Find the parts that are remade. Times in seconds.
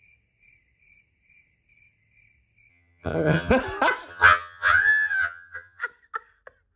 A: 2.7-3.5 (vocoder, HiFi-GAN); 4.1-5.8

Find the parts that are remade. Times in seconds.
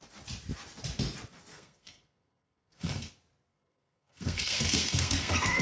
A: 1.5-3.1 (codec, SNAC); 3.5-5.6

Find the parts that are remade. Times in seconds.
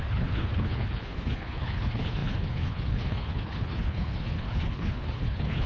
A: 0.0-5.7 (codec, HILCodec)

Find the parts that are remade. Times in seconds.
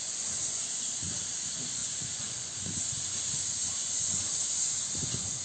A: 0.0-5.4 (vocoder, Vocos)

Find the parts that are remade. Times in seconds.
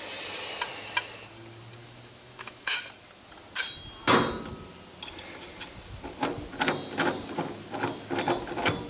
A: 1.8-2.8 (autoencoder, DAC-VAE)